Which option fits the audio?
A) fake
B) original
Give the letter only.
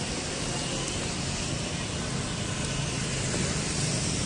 B